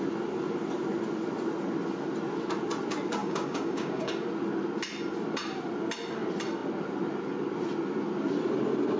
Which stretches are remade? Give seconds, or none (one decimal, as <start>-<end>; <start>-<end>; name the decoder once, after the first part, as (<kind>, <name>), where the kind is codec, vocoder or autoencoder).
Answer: 3.2-4.1 (codec, DAC)